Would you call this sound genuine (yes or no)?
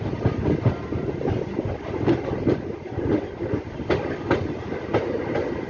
no